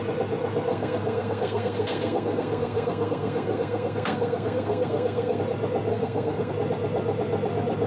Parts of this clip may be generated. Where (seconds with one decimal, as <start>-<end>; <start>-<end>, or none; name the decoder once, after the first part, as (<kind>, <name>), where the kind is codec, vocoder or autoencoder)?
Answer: 0.7-5.4 (codec, SNAC); 5.9-6.5